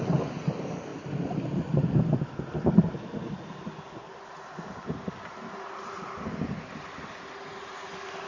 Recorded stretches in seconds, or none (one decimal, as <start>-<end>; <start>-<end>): 0.0-8.3